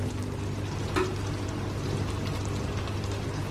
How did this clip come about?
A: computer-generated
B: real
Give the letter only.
A